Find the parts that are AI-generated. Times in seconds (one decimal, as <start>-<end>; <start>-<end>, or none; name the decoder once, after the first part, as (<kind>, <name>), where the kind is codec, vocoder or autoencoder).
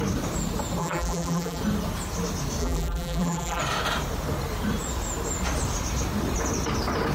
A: 0.8-1.6 (vocoder, BigVGAN v2); 2.6-3.6